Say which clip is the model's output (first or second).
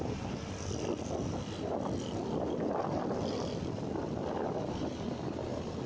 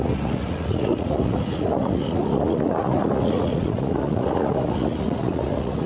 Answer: second